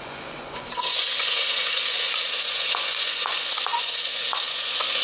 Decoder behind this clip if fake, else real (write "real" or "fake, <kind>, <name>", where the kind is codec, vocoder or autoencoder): fake, vocoder, Vocos